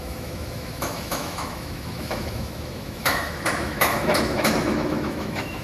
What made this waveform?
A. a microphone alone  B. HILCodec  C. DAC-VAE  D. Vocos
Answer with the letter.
C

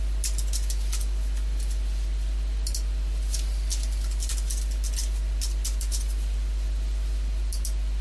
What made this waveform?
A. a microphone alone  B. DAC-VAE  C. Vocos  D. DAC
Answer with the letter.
A